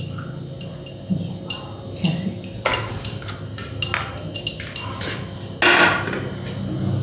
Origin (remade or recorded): recorded